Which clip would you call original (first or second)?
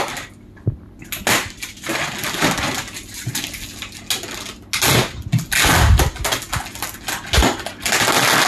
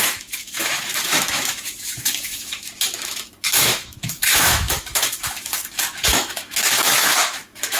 first